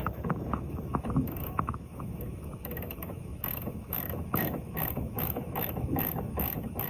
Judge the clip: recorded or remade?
remade